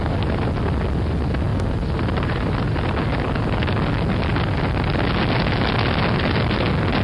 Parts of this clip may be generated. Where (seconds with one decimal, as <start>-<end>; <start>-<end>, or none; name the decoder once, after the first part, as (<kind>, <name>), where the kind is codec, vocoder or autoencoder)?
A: none